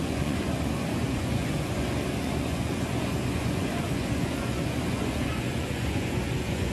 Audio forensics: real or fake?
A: fake